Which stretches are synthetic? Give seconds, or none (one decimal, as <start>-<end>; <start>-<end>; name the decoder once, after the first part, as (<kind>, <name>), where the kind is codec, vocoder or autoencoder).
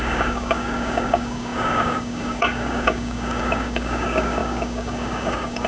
0.0-5.7 (codec, DAC)